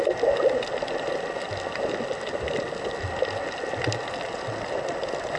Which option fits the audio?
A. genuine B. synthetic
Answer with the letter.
A